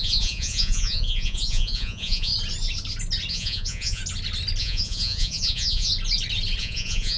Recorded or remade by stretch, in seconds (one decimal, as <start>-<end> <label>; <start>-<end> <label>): 0.0-2.3 remade; 2.3-3.3 recorded; 3.3-4.0 remade; 4.0-4.6 recorded; 4.6-5.9 remade; 5.9-6.6 recorded; 6.6-7.2 remade